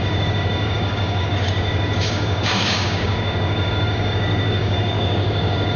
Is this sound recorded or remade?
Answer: remade